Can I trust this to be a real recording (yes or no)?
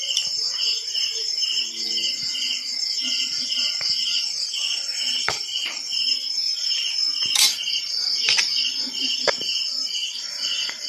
no